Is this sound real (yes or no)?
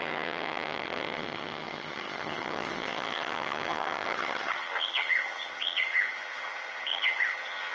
no